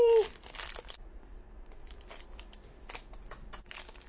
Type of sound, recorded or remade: recorded